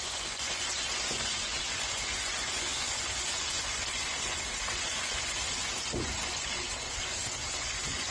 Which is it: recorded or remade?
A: remade